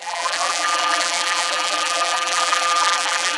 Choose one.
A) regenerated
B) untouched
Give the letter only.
A